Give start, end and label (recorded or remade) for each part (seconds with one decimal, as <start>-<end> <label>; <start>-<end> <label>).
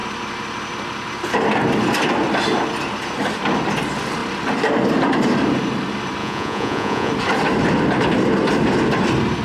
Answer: 0.0-6.2 recorded; 6.2-7.1 remade; 7.1-9.4 recorded